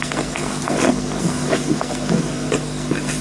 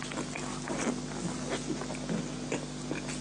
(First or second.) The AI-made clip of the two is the first